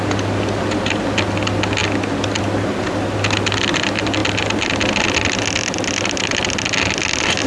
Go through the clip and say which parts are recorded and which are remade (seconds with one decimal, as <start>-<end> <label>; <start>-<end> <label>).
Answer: 0.0-7.5 recorded